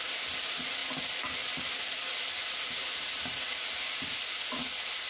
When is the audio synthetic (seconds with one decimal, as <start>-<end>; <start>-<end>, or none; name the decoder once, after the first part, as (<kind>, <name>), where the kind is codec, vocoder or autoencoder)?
none